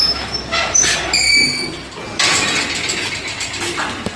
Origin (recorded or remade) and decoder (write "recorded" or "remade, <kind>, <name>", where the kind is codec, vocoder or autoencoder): remade, vocoder, BigVGAN v2